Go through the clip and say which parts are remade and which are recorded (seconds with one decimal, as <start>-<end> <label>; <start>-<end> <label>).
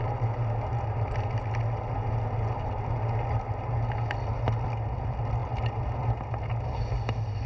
0.0-7.5 recorded